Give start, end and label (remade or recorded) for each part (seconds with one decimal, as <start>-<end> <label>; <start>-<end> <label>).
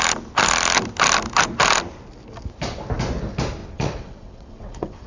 0.0-3.6 recorded; 3.6-5.1 remade